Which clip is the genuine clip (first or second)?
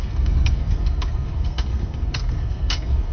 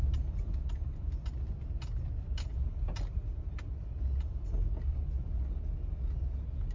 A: second